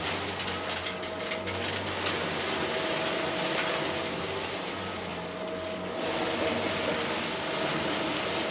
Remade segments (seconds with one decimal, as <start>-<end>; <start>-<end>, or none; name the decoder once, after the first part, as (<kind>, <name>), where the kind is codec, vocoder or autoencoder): none

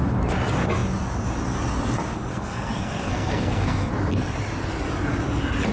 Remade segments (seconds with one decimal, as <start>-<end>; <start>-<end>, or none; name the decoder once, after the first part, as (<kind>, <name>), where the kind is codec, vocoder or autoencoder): 2.3-3.9 (codec, SNAC)

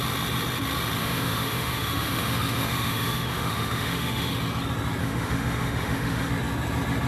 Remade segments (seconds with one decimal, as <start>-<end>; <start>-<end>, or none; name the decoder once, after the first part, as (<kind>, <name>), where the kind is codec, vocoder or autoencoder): 1.0-4.3 (autoencoder, DAC-VAE); 5.0-6.3